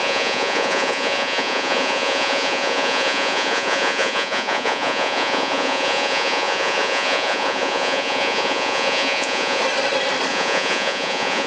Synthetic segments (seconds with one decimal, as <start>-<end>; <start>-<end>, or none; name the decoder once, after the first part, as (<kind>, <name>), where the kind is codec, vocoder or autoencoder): 0.0-9.6 (vocoder, Vocos); 10.3-11.5